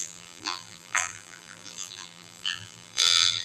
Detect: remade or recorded remade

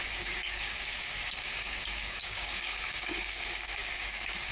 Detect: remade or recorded remade